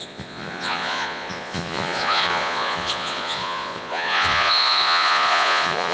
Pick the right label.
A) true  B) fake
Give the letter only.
B